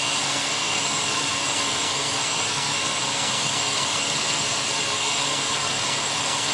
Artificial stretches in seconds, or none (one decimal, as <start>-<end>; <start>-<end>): 0.0-6.5